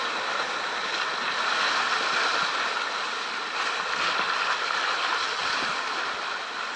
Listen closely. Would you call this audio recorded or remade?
recorded